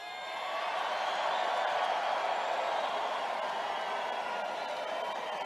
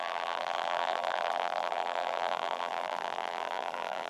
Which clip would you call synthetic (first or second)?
second